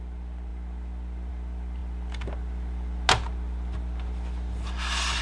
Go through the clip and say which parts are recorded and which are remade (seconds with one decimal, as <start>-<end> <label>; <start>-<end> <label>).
0.0-5.2 recorded